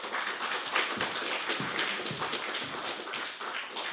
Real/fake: real